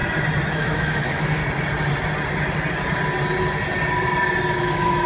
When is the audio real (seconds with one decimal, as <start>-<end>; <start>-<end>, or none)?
0.0-0.5; 1.4-4.5